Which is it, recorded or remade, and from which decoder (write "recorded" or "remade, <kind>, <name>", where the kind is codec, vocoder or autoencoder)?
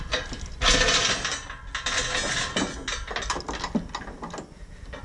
recorded